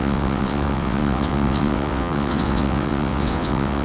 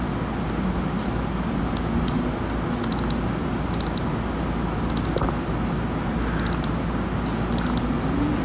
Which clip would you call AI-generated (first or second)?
first